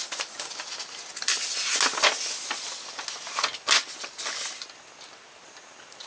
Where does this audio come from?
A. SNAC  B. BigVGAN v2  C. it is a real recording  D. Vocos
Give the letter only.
C